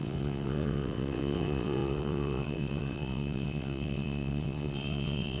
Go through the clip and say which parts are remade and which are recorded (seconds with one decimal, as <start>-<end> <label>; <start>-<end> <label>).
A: 0.0-5.4 remade